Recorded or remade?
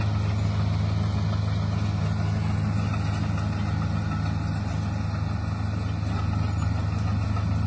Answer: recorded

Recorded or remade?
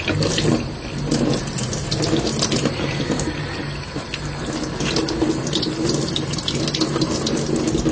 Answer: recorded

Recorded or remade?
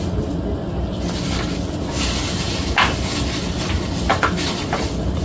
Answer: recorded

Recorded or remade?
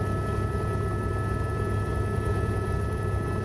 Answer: recorded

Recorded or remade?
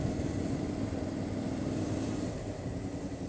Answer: recorded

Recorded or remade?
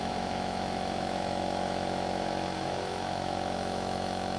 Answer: remade